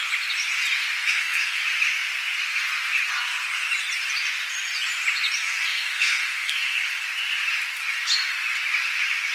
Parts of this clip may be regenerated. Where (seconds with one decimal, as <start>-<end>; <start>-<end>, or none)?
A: 1.0-1.6; 5.4-6.8